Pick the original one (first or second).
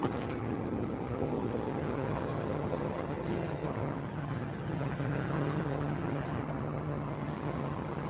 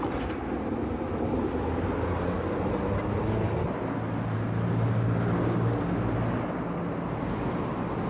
second